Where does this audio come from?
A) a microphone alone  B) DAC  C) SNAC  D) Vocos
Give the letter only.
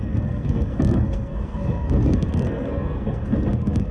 C